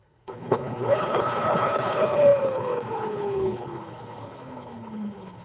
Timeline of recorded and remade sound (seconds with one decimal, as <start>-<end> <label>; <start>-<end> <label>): 0.0-5.4 remade